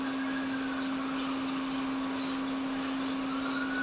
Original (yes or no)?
yes